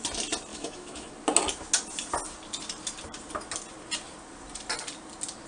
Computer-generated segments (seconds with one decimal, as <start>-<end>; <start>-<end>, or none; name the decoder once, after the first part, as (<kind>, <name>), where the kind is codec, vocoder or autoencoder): 0.5-1.1 (autoencoder, DAC-VAE)